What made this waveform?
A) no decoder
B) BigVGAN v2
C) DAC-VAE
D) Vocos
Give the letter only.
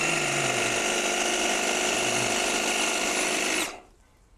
A